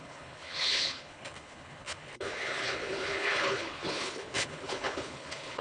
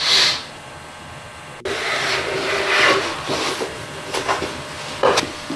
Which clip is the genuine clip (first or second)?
second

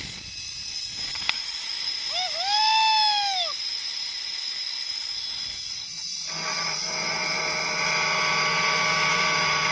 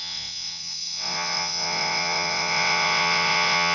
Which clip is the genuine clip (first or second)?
first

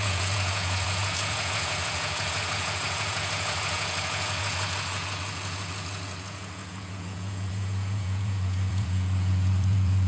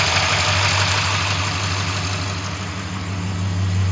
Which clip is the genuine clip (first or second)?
second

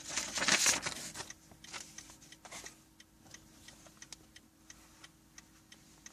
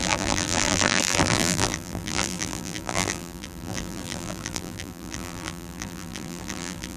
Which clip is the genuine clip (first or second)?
first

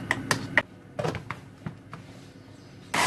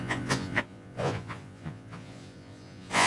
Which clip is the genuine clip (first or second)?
first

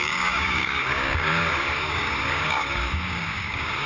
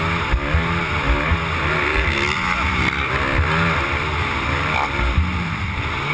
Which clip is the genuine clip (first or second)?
second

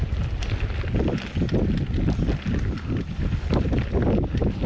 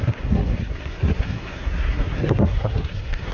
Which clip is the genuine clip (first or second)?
first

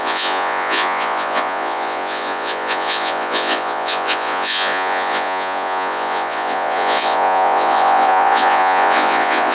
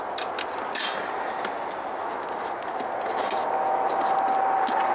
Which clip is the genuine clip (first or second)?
second